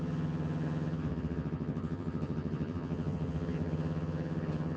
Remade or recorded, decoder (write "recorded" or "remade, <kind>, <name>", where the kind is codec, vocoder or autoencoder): remade, vocoder, HiFi-GAN